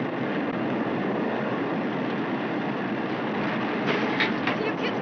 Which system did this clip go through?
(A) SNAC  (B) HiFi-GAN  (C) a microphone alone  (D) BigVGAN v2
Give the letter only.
C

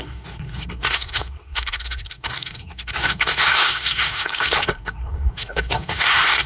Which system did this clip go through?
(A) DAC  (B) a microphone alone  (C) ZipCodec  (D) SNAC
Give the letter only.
D